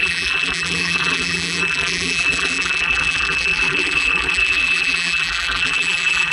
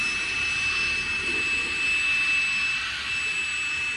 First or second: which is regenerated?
first